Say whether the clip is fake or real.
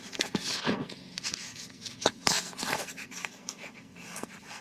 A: fake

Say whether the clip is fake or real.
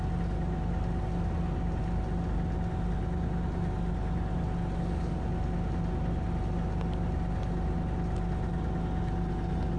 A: real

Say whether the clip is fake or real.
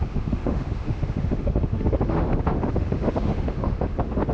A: fake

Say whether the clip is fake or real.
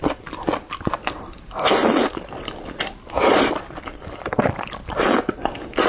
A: fake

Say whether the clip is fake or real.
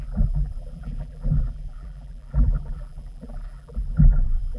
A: fake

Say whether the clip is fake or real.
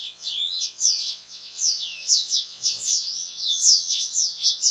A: fake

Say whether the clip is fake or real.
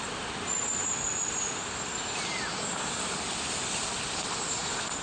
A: real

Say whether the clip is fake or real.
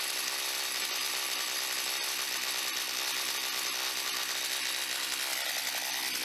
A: real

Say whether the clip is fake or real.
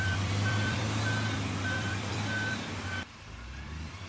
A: fake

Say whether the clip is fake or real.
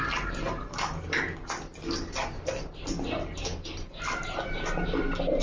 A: real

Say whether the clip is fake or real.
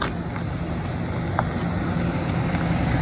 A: real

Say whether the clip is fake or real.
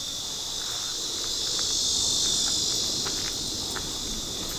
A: real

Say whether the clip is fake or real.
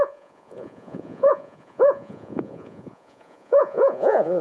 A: fake